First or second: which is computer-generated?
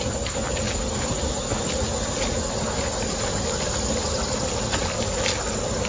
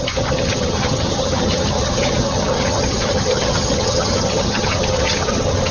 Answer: second